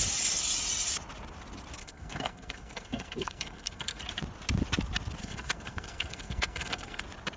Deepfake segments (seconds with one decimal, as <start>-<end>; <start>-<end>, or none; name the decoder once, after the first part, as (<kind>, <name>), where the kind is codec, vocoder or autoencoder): 1.8-4.0 (codec, SNAC); 5.2-7.0